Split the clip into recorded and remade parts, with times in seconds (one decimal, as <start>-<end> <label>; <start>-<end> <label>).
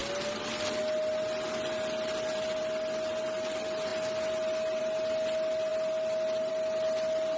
0.0-7.4 recorded